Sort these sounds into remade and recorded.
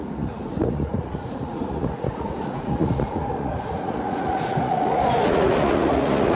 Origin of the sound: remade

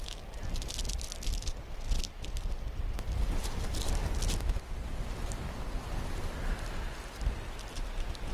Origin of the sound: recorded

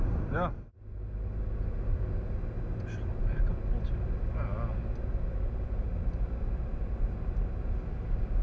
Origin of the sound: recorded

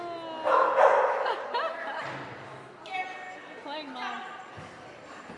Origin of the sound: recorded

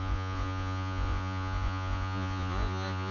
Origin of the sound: remade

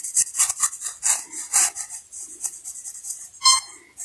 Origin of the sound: recorded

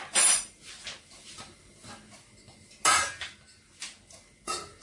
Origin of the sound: recorded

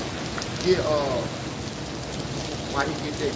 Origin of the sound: recorded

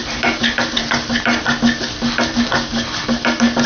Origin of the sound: recorded